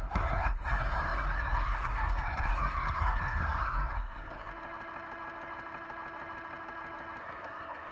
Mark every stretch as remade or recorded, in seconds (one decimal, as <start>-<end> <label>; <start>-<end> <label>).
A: 0.0-4.5 remade; 4.5-7.2 recorded; 7.2-7.9 remade